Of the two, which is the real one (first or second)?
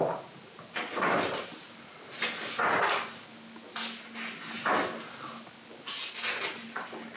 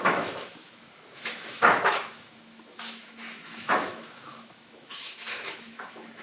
first